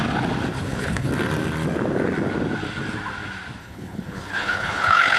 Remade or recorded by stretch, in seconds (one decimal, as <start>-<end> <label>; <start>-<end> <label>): 0.0-0.5 recorded; 0.5-1.1 remade; 1.1-3.6 recorded; 3.6-5.2 remade